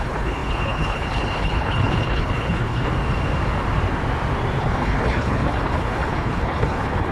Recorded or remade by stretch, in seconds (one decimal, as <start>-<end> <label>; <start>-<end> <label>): 0.0-2.9 remade; 2.9-4.6 recorded; 4.6-7.1 remade

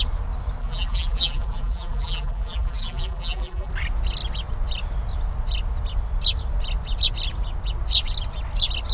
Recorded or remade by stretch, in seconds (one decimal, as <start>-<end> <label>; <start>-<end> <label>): 0.0-0.6 recorded; 0.6-3.7 remade; 3.7-8.9 recorded

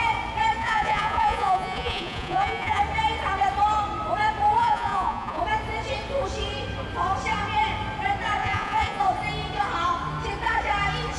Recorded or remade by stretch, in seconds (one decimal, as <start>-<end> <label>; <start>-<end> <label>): 0.0-0.6 recorded; 0.6-2.8 remade; 2.8-4.6 recorded; 4.6-5.4 remade; 5.4-8.4 recorded; 8.4-9.0 remade; 9.0-11.2 recorded

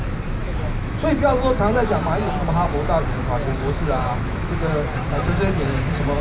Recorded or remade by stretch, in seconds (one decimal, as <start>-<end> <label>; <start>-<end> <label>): 0.0-0.4 recorded; 0.4-1.1 remade; 1.1-3.6 recorded; 3.6-4.7 remade; 4.7-6.2 recorded

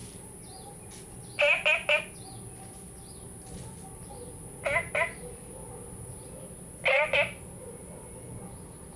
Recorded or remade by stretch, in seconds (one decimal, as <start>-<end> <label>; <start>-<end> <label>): 0.0-9.0 recorded

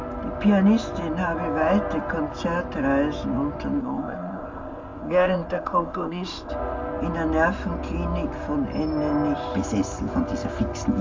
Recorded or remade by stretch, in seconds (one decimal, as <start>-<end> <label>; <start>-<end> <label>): 0.0-3.8 recorded; 3.8-6.5 remade; 6.5-11.0 recorded

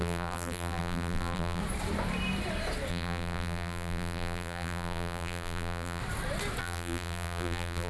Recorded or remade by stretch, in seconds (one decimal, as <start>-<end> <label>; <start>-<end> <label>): 0.0-1.6 remade; 1.6-2.9 recorded; 2.9-6.0 remade; 6.0-6.6 recorded; 6.6-7.9 remade